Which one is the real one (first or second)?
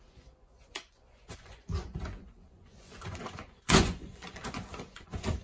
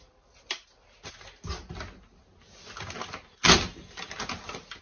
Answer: second